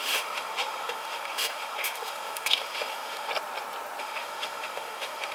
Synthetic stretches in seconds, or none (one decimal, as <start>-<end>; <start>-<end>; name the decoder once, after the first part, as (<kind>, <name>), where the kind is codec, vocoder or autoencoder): 0.0-3.3 (autoencoder, DAC-VAE); 4.0-5.3